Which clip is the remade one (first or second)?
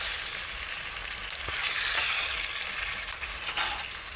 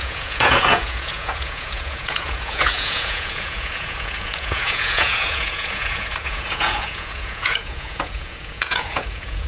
second